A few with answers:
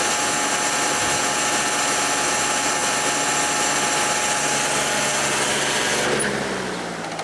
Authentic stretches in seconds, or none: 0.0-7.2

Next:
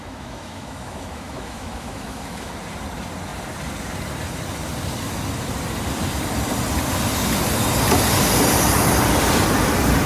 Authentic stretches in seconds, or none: 2.5-10.1

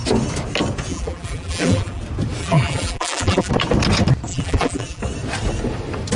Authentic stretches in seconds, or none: 0.0-0.9; 2.0-2.4; 3.5-4.3; 5.0-6.2